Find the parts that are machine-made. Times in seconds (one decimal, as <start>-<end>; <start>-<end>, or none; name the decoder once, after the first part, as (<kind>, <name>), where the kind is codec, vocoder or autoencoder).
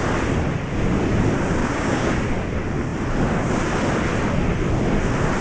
1.6-2.1 (codec, DAC)